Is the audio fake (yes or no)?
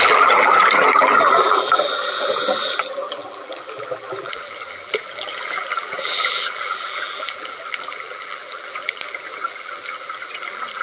yes